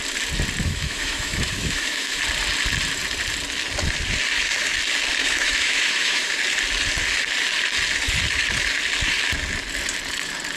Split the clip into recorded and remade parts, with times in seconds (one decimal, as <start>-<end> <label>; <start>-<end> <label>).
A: 0.0-0.6 recorded; 0.6-2.2 remade; 2.2-5.2 recorded; 5.2-6.3 remade; 6.3-10.6 recorded